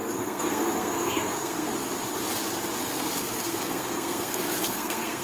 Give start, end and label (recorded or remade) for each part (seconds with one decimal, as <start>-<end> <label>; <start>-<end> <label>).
0.0-1.7 remade; 1.7-2.8 recorded; 2.8-5.2 remade